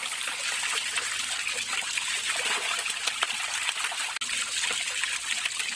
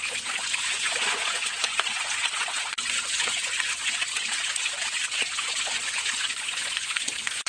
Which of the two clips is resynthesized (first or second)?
second